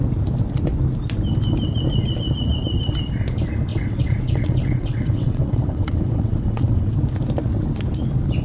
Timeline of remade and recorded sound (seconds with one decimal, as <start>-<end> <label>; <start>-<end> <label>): 0.0-3.7 recorded; 3.7-6.9 remade; 6.9-8.4 recorded

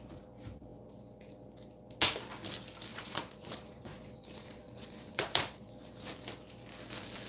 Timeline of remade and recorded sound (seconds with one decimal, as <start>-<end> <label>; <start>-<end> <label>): 0.0-2.9 recorded; 2.9-5.7 remade; 5.7-7.3 recorded

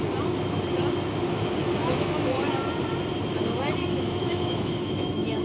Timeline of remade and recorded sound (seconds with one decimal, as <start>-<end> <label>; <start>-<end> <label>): 0.0-1.6 recorded; 1.6-2.4 remade; 2.4-3.8 recorded; 3.8-5.4 remade

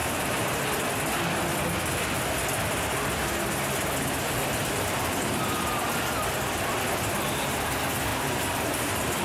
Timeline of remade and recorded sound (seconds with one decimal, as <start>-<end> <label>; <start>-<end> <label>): 0.0-0.6 remade; 0.6-4.6 recorded; 4.6-5.4 remade; 5.4-8.1 recorded; 8.1-9.2 remade